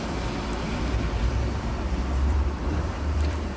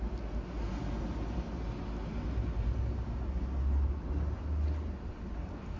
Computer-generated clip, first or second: first